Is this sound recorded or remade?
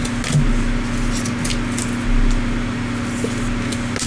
recorded